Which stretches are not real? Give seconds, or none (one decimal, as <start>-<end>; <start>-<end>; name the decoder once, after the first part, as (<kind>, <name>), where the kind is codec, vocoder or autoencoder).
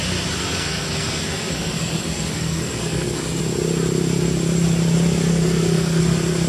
0.4-3.4 (codec, SNAC); 5.3-6.0